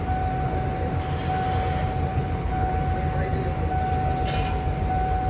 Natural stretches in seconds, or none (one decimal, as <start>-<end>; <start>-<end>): 0.0-2.1; 2.7-5.3